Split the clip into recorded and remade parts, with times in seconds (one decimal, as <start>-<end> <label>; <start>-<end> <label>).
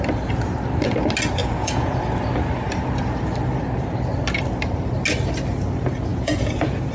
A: 0.0-1.4 recorded; 1.4-2.0 remade; 2.0-6.1 recorded; 6.1-6.9 remade